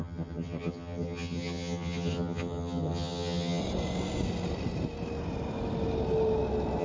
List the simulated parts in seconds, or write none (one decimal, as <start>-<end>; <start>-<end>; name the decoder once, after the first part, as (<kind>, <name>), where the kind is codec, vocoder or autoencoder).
0.0-3.6 (vocoder, HiFi-GAN)